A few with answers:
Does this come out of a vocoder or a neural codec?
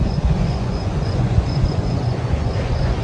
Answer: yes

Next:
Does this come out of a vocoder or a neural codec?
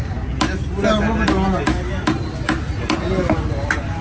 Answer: no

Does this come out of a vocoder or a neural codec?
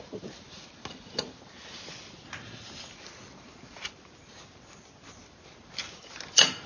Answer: no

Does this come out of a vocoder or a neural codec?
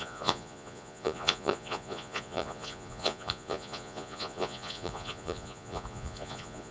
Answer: yes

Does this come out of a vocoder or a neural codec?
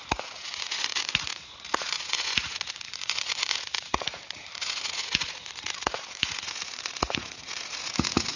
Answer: yes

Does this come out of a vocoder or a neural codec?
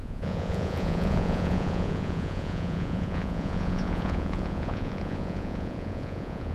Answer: yes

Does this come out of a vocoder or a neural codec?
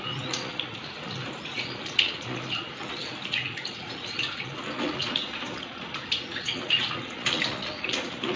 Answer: yes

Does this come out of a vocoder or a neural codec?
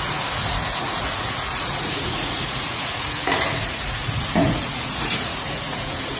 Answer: yes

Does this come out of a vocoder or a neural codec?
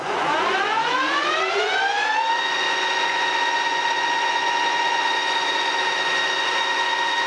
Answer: yes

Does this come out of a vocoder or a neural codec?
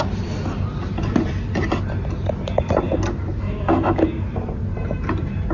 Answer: no